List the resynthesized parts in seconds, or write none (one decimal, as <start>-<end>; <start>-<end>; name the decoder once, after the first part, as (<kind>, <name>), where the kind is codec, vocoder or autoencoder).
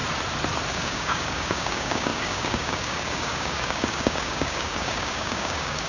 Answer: 0.7-5.9 (codec, DAC)